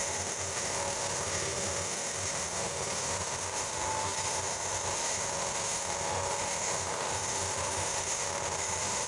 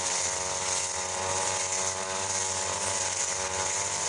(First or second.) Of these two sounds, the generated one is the first